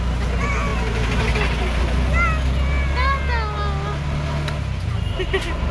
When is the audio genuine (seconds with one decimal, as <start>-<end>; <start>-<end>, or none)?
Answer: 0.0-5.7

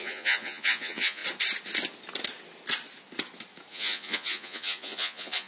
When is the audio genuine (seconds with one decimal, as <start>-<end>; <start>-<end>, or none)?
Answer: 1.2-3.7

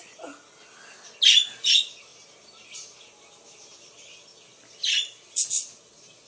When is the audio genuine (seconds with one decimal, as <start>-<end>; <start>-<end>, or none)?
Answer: 0.0-6.3

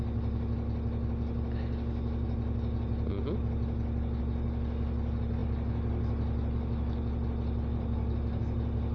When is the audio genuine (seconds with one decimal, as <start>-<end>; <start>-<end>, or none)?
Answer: 0.0-8.9

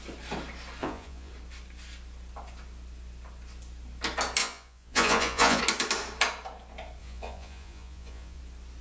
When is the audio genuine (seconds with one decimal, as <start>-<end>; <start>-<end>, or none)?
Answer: 0.0-0.8; 1.3-4.4; 5.6-7.0; 8.4-8.8

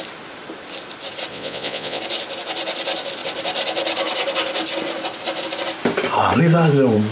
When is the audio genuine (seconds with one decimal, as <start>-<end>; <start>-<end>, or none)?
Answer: 0.0-1.3; 2.0-7.1

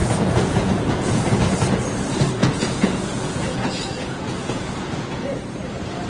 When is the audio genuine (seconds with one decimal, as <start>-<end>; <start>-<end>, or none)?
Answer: 1.2-2.4; 5.4-6.1

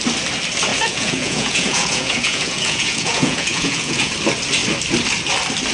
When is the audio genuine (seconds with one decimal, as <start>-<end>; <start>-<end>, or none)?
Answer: 0.0-0.7; 4.1-5.7